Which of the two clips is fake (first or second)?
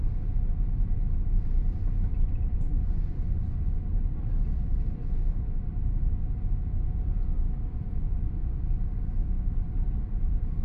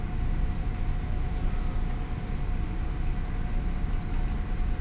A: first